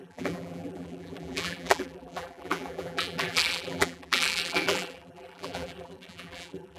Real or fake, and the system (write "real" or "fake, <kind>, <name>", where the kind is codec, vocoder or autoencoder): fake, vocoder, BigVGAN v2